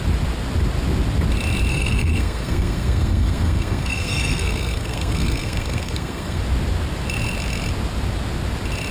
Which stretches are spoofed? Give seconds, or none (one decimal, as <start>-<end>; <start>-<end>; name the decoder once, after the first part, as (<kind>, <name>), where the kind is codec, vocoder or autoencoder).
1.7-6.4 (codec, SNAC)